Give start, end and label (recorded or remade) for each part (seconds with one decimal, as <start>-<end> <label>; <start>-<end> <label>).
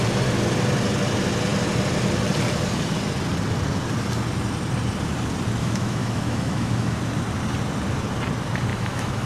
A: 0.0-5.6 recorded; 5.6-7.0 remade; 7.0-8.7 recorded; 8.7-9.3 remade